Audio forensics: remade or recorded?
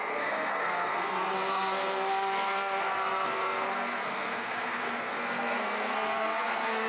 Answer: remade